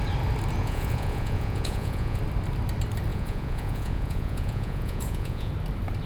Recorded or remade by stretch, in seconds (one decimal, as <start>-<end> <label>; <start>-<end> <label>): 0.0-0.6 recorded; 0.6-2.2 remade; 2.2-3.1 recorded; 3.1-5.5 remade; 5.5-6.1 recorded